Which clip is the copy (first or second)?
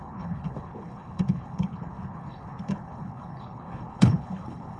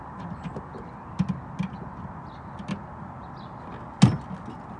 first